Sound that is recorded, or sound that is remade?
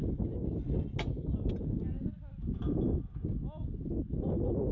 recorded